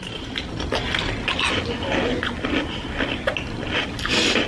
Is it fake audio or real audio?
real